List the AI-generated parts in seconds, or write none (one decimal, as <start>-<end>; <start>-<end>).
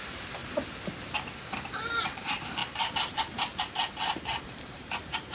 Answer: 0.0-0.4; 2.0-5.3